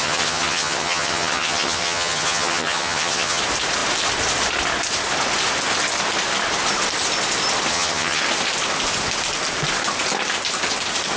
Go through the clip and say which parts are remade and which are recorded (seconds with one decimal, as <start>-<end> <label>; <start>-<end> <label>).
0.0-3.4 remade; 3.4-7.7 recorded; 7.7-8.2 remade; 8.2-11.2 recorded